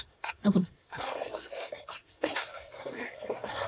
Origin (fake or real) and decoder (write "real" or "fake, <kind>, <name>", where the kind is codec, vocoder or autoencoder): fake, codec, SNAC